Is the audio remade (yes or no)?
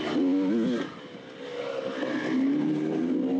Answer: no